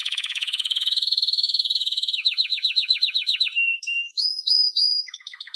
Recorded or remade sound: remade